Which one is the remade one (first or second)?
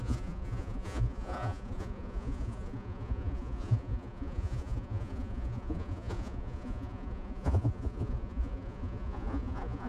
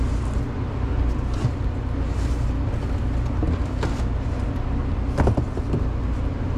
first